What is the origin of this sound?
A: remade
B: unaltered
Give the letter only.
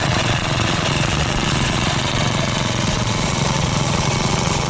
A